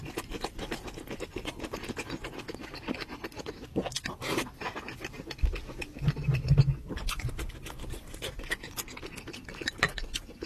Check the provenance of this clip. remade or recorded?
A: recorded